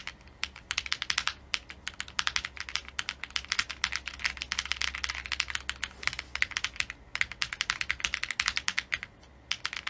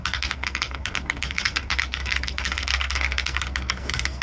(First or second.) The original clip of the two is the first